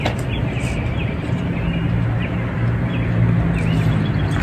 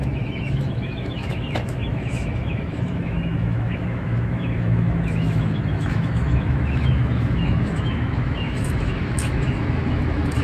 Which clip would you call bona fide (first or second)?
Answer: first